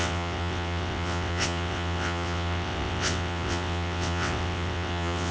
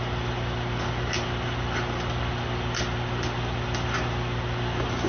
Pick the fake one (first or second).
first